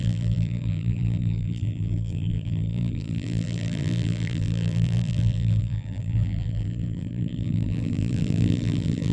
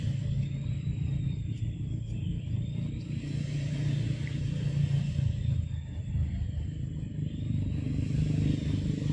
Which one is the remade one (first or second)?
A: first